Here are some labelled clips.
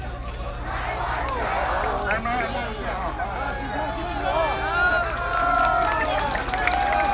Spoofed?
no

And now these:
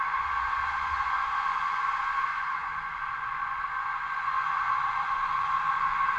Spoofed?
yes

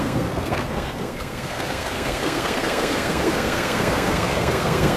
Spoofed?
yes